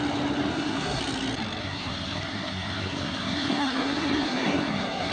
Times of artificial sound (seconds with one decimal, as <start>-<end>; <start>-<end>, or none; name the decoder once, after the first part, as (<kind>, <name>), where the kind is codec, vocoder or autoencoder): 0.5-1.0 (codec, SNAC); 1.6-5.1